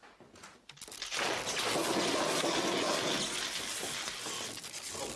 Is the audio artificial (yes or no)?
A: no